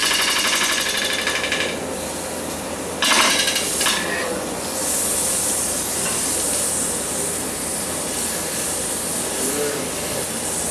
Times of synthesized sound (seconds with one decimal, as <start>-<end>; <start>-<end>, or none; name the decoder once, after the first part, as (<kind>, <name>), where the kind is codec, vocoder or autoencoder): 0.0-1.0 (vocoder, Vocos); 4.2-4.8